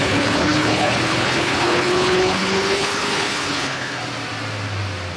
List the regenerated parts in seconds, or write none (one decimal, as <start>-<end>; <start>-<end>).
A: 0.0-4.0